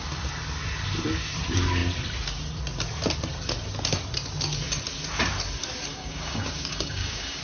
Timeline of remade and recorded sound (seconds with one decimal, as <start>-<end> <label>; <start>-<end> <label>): 0.0-5.9 recorded; 5.9-7.4 remade